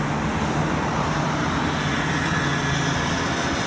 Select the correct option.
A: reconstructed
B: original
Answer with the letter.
B